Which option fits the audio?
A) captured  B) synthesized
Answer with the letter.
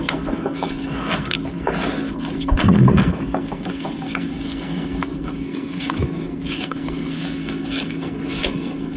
B